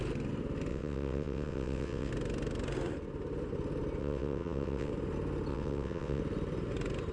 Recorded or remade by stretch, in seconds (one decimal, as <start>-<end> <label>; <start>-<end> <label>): 0.0-0.7 recorded; 0.7-2.1 remade; 2.1-4.0 recorded; 4.0-4.9 remade; 4.9-5.5 recorded; 5.5-6.2 remade; 6.2-7.1 recorded